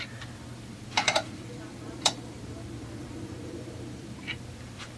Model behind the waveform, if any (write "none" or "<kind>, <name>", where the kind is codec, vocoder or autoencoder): vocoder, BigVGAN v2